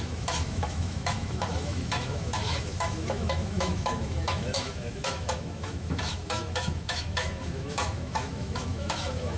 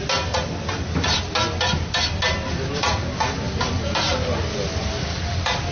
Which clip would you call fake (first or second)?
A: first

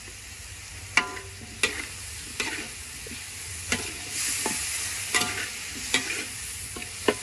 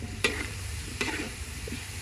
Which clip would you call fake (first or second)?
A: second